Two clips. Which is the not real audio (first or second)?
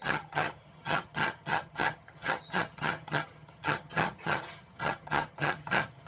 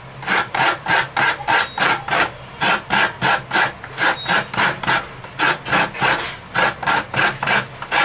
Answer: first